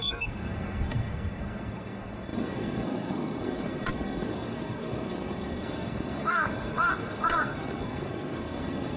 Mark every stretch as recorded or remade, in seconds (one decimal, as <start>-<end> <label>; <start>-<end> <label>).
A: 0.0-9.0 remade